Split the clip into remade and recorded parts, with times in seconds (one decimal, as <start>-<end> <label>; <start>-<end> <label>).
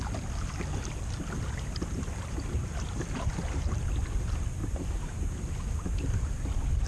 0.0-2.6 recorded; 2.6-3.8 remade; 3.8-4.6 recorded; 4.6-5.6 remade; 5.6-6.9 recorded